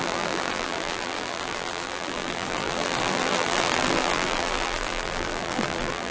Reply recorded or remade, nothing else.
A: remade